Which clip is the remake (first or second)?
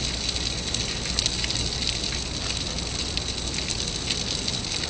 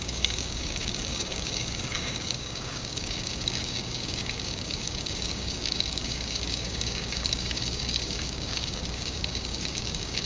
second